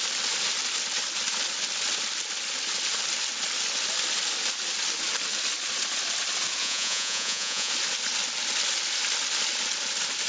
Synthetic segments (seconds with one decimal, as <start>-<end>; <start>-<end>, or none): 6.6-7.7